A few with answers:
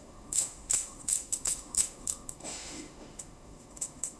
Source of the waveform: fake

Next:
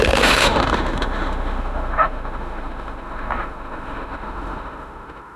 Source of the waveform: fake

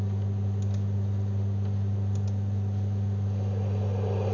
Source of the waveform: real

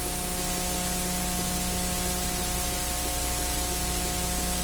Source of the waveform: real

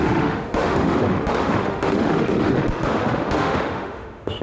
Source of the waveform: fake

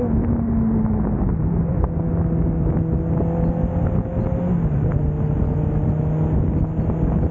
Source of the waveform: real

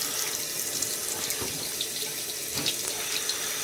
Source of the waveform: real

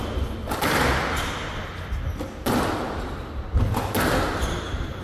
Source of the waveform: real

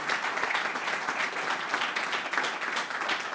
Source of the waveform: real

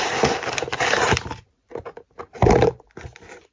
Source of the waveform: real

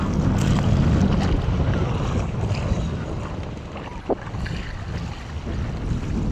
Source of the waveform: real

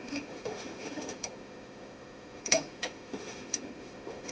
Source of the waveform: fake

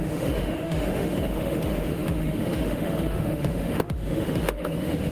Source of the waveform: fake